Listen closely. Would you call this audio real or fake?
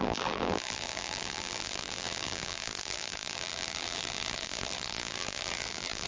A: fake